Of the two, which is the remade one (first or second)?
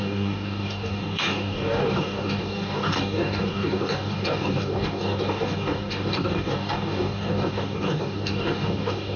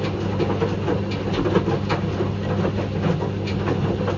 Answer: first